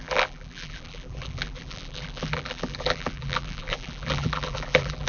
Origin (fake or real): fake